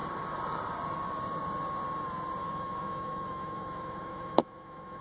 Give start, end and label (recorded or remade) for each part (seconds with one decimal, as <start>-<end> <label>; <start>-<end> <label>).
0.0-2.4 recorded; 2.4-5.0 remade